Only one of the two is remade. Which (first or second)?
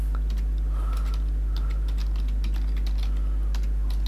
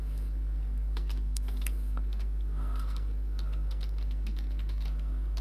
second